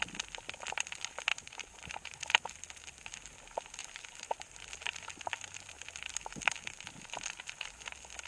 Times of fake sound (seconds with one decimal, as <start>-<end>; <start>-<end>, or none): 1.3-2.3; 3.8-5.3